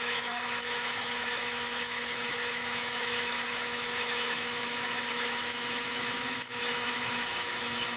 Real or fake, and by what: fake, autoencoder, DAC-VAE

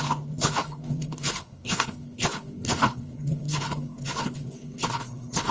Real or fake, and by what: fake, codec, HILCodec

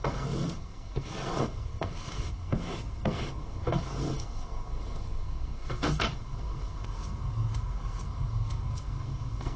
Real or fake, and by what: fake, codec, SNAC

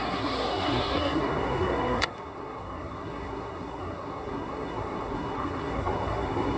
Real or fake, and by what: fake, codec, SNAC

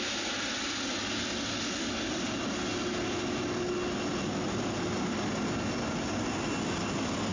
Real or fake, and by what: real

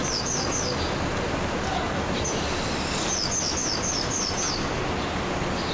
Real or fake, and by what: real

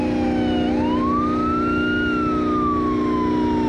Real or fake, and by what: real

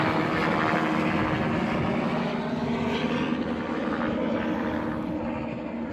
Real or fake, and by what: real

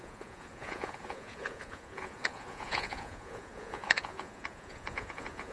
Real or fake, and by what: fake, vocoder, Vocos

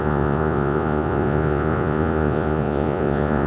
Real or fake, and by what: fake, vocoder, Vocos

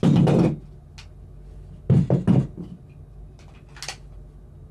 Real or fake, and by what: real